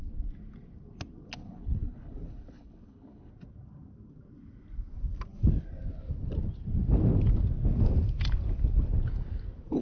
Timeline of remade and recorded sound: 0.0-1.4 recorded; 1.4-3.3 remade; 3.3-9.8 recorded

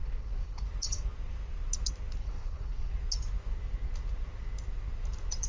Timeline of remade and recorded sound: 0.0-0.7 remade; 0.7-2.2 recorded; 2.2-2.9 remade; 2.9-5.5 recorded

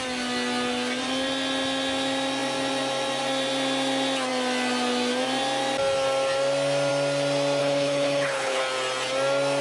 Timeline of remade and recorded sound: 0.0-7.6 recorded; 7.6-8.6 remade; 8.6-9.6 recorded

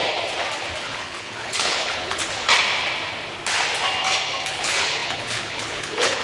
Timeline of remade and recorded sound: 0.0-0.8 recorded; 0.8-2.2 remade; 2.2-4.5 recorded; 4.5-6.2 remade

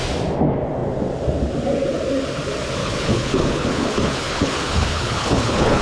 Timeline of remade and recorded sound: 0.0-2.8 recorded; 2.8-5.8 remade

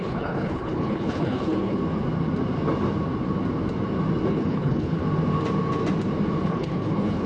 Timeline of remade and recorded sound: 0.0-1.8 remade; 1.8-4.3 recorded; 4.3-5.0 remade; 5.0-6.4 recorded; 6.4-7.3 remade

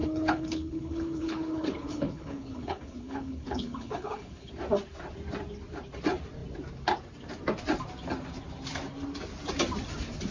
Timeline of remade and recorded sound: 0.0-4.5 remade; 4.5-10.3 recorded